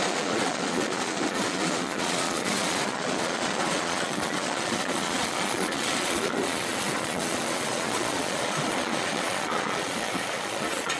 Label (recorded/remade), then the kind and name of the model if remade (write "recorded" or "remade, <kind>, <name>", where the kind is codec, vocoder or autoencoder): remade, vocoder, Vocos